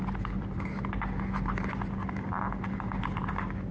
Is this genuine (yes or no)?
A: yes